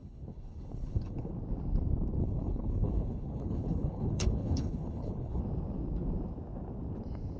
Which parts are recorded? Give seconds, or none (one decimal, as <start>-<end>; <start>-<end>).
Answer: 1.3-2.2; 5.4-7.4